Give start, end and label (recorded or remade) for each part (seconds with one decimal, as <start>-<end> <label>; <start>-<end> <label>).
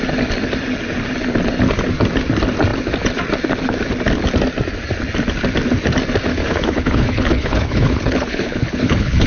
0.0-6.3 recorded; 6.3-9.3 remade